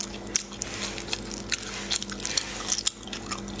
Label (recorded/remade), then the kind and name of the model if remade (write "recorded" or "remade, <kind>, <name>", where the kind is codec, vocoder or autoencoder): recorded